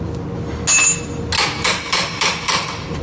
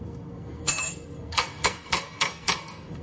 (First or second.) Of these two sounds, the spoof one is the second